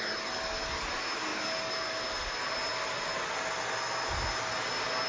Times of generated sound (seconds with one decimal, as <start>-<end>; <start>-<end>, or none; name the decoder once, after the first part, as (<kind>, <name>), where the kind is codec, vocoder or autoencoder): none